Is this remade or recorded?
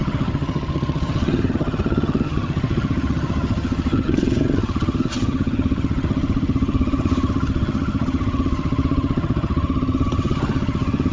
remade